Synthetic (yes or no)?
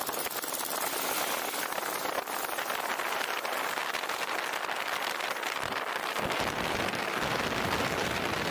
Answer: no